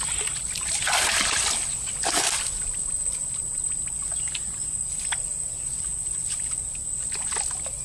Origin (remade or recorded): recorded